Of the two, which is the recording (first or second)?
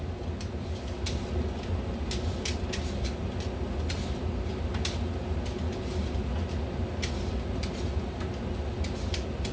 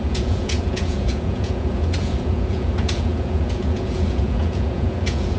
first